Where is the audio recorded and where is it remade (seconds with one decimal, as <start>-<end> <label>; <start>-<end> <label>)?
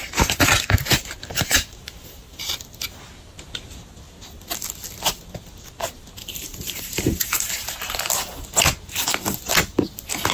0.0-2.5 remade; 2.5-6.5 recorded; 6.5-8.1 remade; 8.1-10.3 recorded